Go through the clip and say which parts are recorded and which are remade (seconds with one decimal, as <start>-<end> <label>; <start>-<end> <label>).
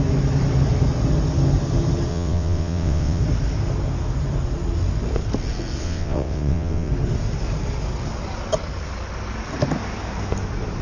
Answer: 0.0-2.1 recorded; 2.1-3.2 remade; 3.2-5.8 recorded; 5.8-6.9 remade; 6.9-10.8 recorded